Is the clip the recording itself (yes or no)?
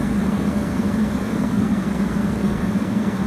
no